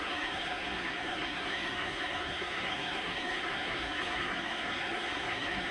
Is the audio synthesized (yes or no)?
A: yes